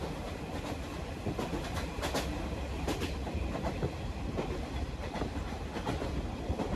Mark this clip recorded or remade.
recorded